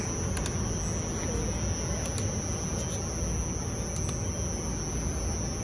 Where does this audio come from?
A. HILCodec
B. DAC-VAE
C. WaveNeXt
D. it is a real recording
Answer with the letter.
D